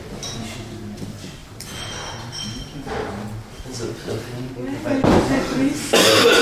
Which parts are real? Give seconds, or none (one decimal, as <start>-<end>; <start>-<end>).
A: 0.0-6.4